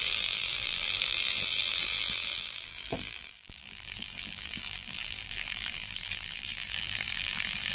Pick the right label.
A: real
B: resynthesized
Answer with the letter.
B